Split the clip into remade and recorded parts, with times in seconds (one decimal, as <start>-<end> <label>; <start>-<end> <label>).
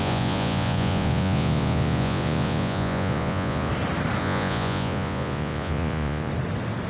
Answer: 0.0-3.7 remade; 3.7-4.2 recorded; 4.2-6.3 remade; 6.3-6.9 recorded